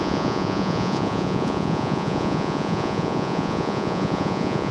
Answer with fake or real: fake